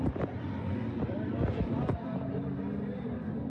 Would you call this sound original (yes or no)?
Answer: yes